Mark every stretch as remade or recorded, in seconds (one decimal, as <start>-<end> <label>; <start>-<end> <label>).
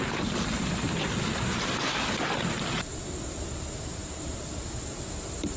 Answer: 0.0-5.6 remade